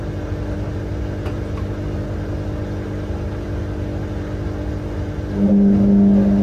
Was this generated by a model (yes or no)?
no